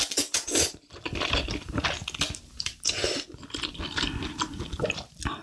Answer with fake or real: fake